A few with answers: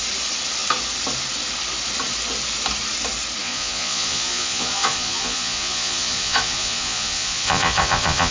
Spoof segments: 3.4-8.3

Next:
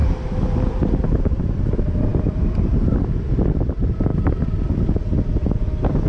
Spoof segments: none